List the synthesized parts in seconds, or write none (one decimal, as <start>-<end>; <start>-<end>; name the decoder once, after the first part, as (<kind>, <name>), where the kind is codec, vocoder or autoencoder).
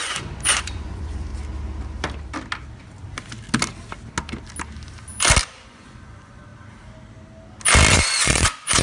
0.0-1.3 (vocoder, Vocos); 5.4-6.5; 7.9-8.8